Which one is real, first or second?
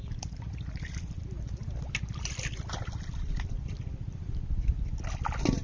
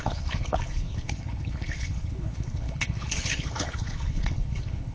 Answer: first